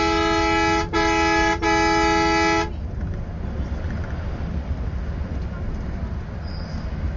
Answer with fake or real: real